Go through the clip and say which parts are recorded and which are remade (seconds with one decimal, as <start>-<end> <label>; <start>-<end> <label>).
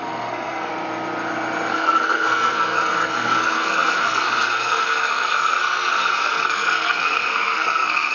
0.0-0.7 remade; 0.7-1.7 recorded; 1.7-8.1 remade